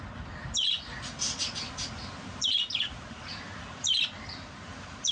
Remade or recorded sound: recorded